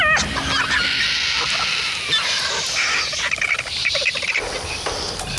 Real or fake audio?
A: real